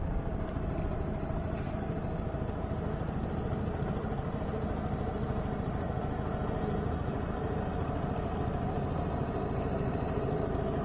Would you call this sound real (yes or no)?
yes